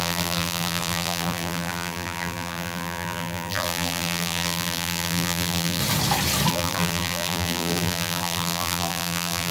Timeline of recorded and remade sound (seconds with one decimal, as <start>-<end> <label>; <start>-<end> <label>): 0.0-5.8 remade; 5.8-6.5 recorded; 6.5-9.5 remade